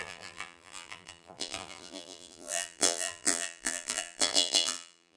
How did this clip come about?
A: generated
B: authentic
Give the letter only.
A